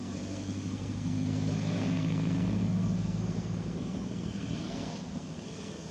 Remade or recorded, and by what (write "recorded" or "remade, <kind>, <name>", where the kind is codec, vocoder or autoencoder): remade, codec, SNAC